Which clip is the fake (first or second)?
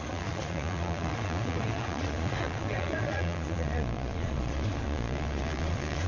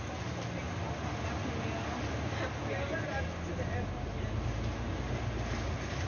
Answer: first